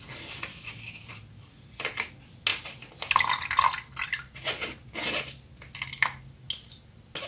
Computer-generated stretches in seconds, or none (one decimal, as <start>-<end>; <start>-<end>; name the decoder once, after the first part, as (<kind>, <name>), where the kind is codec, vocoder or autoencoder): 0.5-1.1 (autoencoder, DAC-VAE)